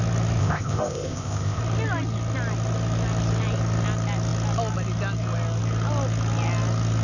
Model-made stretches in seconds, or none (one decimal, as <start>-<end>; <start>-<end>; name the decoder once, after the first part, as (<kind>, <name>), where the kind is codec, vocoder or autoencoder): 0.4-1.6 (codec, ZipCodec)